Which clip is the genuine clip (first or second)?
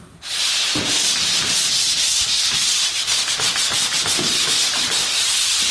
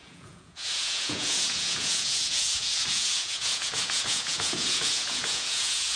first